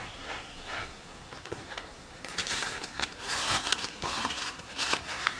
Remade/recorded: remade